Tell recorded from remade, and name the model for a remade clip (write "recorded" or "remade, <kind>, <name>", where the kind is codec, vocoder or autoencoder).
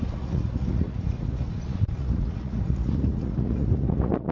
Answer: remade, vocoder, Vocos